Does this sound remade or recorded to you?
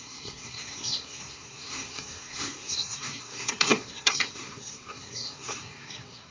remade